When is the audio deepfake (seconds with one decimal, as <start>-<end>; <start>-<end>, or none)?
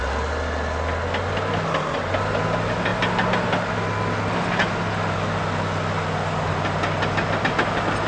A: none